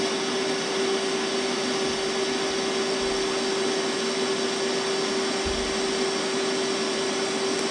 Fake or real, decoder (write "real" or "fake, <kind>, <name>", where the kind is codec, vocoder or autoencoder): real